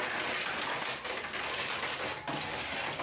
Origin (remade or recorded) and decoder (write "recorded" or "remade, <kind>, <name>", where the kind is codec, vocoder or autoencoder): recorded